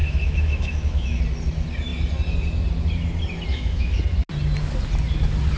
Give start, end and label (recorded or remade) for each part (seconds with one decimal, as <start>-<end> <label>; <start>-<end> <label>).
0.0-1.2 remade; 1.2-3.5 recorded; 3.5-4.0 remade; 4.0-5.6 recorded